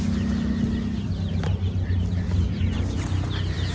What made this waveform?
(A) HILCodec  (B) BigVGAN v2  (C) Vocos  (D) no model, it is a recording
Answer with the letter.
D